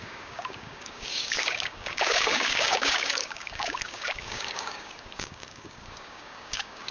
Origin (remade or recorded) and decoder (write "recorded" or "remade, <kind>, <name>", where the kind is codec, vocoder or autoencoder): remade, codec, DAC